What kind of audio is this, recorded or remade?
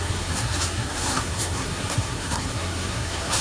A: remade